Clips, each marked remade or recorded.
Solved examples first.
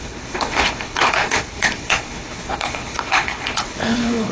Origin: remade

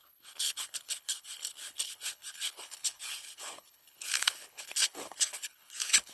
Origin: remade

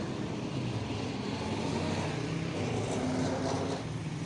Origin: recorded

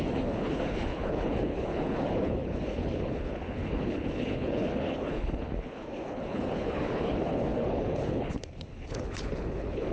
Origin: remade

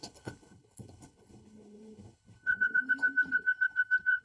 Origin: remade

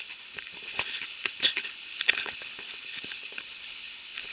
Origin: remade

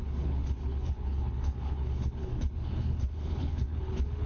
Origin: remade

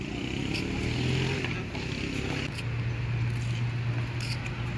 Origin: recorded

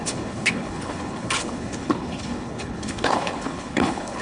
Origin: remade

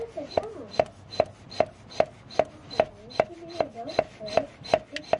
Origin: recorded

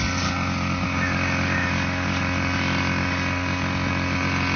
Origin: recorded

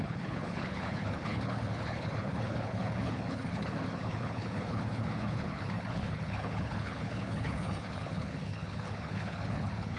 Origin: remade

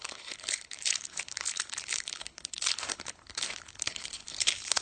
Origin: remade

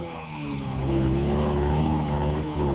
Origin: remade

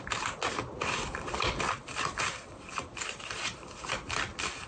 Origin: recorded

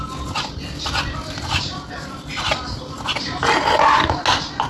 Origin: recorded